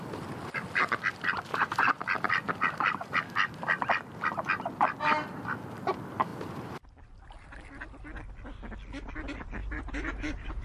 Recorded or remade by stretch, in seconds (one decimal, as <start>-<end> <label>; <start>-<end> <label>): 0.0-1.5 recorded; 1.5-2.0 remade; 2.0-9.6 recorded; 9.6-10.6 remade